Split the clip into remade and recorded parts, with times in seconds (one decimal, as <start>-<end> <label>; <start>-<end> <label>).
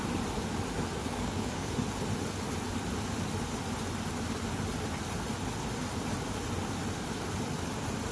0.0-1.0 recorded; 1.0-1.7 remade; 1.7-8.1 recorded